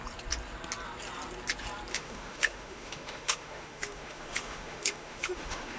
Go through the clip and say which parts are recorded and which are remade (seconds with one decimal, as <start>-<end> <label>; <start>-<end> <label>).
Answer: 0.0-1.9 recorded; 1.9-5.8 remade